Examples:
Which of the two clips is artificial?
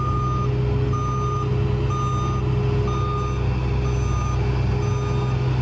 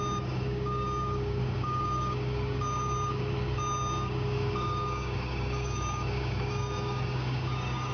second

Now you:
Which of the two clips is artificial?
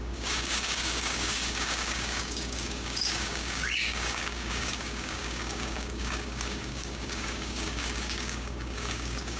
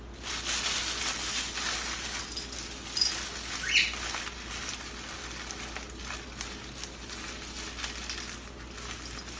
first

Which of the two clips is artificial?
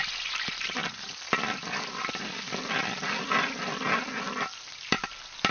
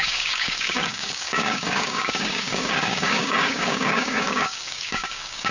second